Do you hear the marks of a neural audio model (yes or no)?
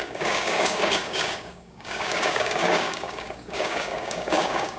yes